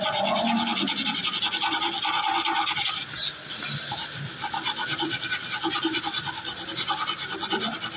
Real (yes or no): yes